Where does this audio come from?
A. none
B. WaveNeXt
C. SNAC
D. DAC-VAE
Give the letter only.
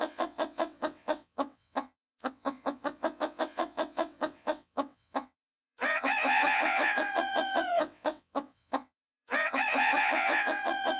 B